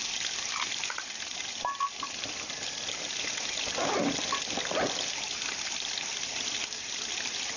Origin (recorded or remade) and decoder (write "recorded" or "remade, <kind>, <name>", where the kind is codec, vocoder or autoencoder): recorded